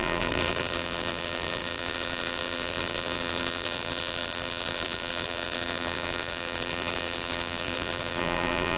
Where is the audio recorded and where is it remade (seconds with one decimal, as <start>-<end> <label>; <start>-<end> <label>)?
0.0-8.8 remade